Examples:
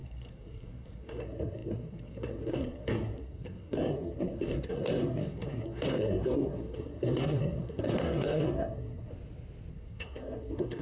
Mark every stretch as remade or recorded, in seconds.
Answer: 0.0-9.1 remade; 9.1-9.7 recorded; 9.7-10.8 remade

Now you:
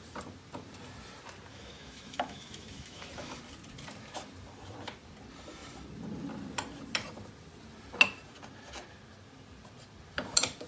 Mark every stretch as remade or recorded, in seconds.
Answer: 0.0-1.5 recorded; 1.5-3.4 remade; 3.4-10.7 recorded